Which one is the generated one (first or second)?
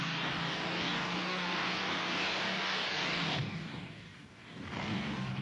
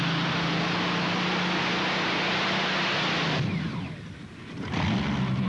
first